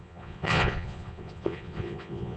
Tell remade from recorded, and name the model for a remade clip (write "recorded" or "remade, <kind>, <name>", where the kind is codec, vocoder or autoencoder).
remade, vocoder, Vocos